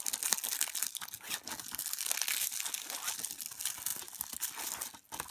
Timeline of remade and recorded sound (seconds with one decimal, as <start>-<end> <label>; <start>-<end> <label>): 0.0-5.3 recorded